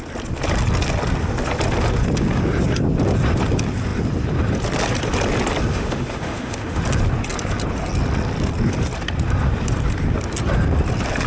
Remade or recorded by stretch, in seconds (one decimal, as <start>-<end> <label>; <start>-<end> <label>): 0.0-5.7 recorded; 5.7-6.8 remade; 6.8-11.3 recorded